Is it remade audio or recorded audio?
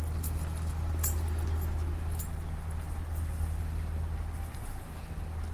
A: recorded